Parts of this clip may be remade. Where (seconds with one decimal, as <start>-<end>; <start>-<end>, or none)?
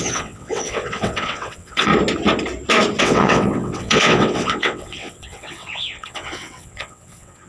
0.0-1.9; 3.0-7.5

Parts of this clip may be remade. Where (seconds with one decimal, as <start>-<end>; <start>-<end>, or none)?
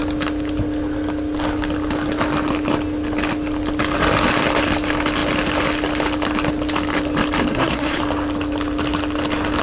7.5-8.0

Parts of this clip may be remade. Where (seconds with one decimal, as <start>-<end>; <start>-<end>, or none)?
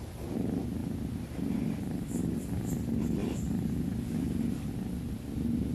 none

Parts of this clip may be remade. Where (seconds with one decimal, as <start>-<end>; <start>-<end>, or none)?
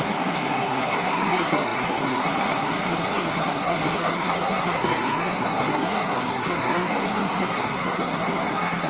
0.0-8.9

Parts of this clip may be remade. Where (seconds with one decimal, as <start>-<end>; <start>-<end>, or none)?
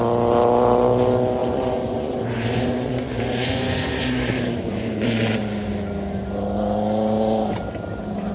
1.4-5.4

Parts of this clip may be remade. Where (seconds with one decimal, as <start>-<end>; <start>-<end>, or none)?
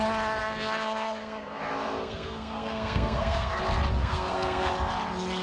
0.4-3.6; 4.0-4.7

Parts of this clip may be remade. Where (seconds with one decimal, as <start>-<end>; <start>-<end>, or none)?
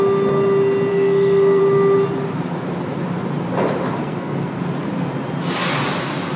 0.9-1.6; 4.0-4.6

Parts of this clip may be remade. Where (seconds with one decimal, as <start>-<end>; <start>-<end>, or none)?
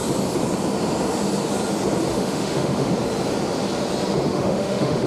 2.1-2.9; 4.3-5.1